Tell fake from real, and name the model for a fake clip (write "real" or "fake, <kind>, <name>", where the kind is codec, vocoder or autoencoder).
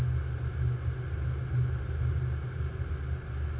real